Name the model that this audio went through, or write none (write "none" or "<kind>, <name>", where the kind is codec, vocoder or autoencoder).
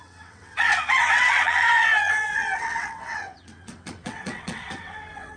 vocoder, WaveNeXt